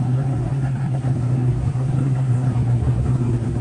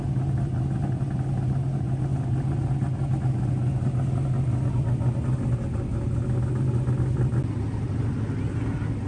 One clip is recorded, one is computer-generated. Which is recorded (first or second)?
second